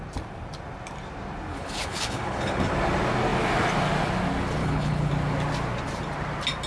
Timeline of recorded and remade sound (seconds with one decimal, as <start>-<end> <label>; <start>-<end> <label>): 0.0-1.5 recorded; 1.5-2.6 remade; 2.6-4.6 recorded; 4.6-5.1 remade; 5.1-6.7 recorded